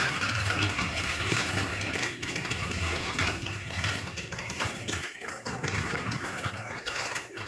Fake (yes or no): yes